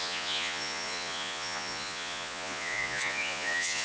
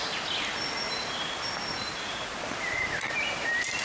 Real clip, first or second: second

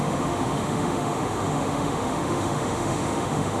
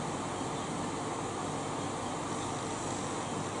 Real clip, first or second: second